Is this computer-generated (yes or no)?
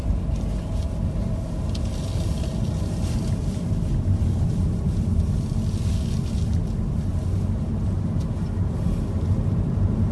no